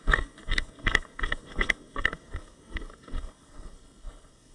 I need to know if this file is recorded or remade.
remade